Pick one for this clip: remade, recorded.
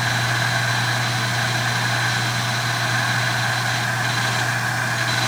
recorded